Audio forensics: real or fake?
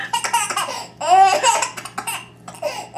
real